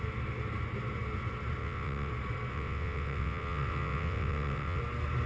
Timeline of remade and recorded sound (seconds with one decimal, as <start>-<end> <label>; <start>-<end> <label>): 0.0-1.6 recorded; 1.6-2.1 remade; 2.1-2.5 recorded; 2.5-4.8 remade; 4.8-5.3 recorded